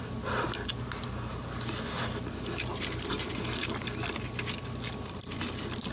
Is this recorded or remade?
recorded